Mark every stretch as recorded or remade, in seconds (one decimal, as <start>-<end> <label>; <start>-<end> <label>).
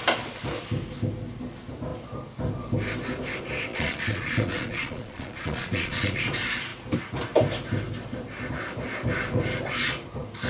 0.0-3.7 recorded; 3.7-6.2 remade; 6.2-10.5 recorded